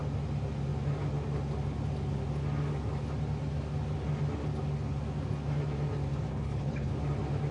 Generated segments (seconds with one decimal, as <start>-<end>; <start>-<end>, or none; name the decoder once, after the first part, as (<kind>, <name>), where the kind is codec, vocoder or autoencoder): 6.3-6.9 (codec, HILCodec)